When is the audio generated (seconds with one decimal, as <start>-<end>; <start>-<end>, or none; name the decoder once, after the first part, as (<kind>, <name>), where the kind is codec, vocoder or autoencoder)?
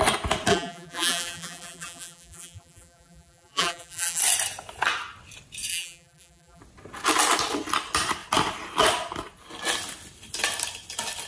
0.5-4.2 (vocoder, BigVGAN v2); 5.7-6.6